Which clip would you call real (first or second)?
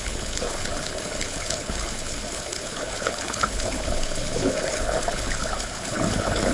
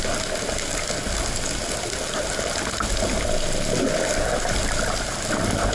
second